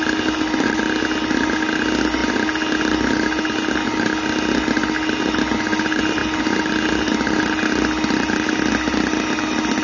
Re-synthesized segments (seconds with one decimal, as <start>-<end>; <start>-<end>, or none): none

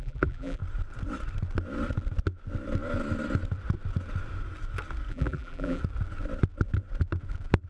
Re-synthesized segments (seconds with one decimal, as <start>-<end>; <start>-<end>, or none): 0.0-0.6; 5.1-5.8

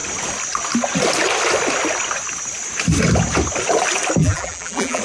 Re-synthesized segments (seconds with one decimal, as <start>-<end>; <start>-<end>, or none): 4.2-5.0

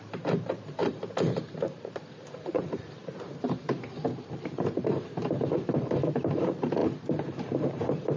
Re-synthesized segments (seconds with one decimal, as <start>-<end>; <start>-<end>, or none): 0.0-5.2; 5.8-8.2

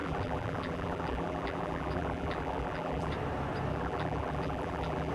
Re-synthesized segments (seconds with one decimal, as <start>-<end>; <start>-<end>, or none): 0.0-3.1; 3.7-5.1

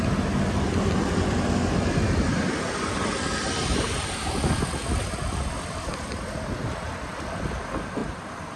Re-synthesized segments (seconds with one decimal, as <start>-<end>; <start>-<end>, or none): 3.6-4.7; 8.0-8.6

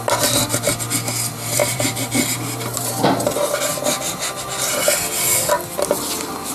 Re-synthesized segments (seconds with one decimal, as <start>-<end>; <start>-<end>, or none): 1.6-3.3